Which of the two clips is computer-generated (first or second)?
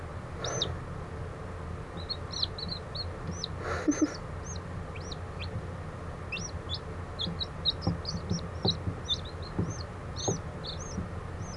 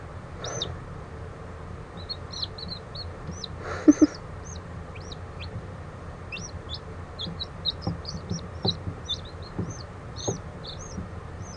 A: second